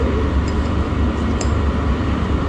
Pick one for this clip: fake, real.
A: real